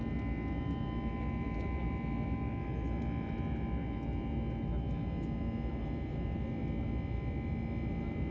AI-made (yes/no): no